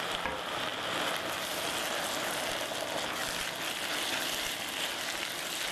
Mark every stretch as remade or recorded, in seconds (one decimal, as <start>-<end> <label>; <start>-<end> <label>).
0.0-5.7 recorded